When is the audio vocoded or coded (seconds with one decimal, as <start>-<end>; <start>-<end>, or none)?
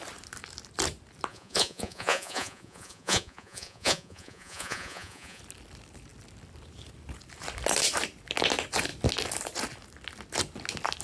1.3-5.4